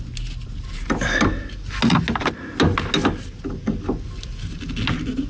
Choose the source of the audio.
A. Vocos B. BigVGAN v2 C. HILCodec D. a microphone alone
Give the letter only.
D